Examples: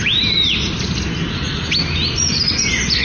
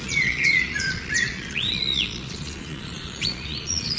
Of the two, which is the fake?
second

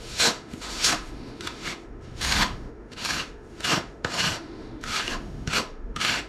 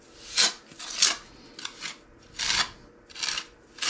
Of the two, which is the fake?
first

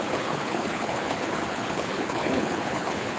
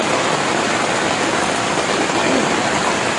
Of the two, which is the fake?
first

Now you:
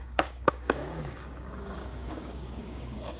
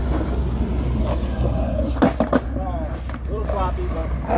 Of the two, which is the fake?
first